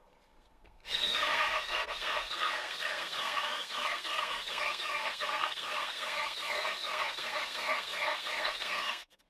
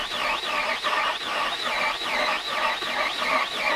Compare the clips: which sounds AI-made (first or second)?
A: first